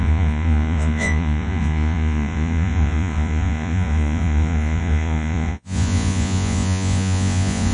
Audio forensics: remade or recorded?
remade